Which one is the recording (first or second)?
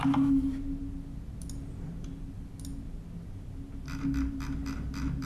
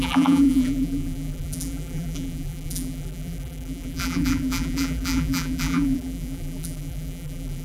first